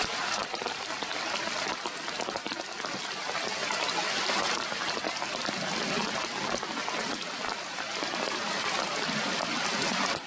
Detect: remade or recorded recorded